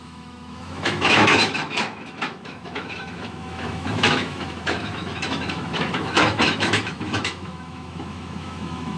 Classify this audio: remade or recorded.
remade